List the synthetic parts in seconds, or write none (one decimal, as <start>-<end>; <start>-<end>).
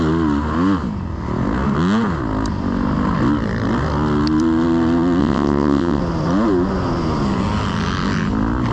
5.2-6.0